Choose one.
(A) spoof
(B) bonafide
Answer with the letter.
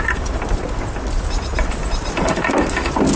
B